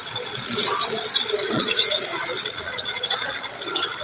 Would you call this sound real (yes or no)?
no